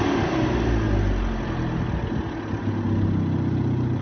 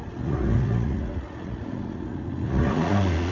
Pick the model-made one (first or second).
second